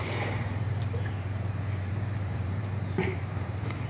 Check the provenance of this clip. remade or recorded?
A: remade